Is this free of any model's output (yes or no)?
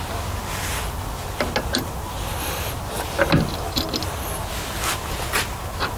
yes